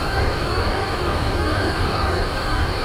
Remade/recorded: remade